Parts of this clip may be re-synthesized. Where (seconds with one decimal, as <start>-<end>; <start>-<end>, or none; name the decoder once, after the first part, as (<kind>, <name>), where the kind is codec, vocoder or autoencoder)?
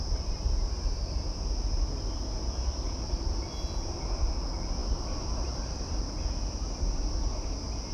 4.8-6.0 (vocoder, BigVGAN v2)